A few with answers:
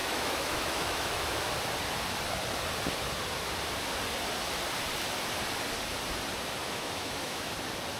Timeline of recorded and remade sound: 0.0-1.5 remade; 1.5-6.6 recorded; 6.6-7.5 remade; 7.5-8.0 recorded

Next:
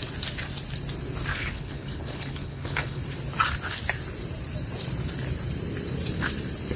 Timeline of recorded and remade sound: 0.0-1.3 recorded; 1.3-3.0 remade; 3.0-6.8 recorded

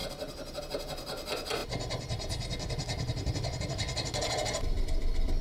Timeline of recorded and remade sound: 0.0-1.6 recorded; 1.6-4.8 remade; 4.8-5.4 recorded

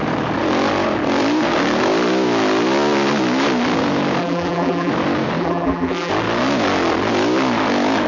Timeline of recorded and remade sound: 0.0-4.2 recorded; 4.2-4.9 remade; 4.9-5.4 recorded; 5.4-6.1 remade; 6.1-8.1 recorded

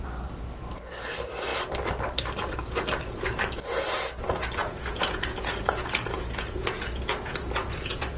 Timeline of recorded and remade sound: 0.0-4.6 recorded; 4.6-8.2 remade